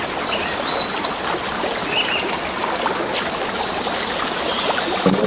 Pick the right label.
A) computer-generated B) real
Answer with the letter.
B